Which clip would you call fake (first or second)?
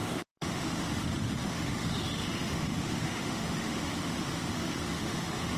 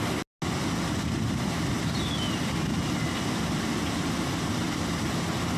first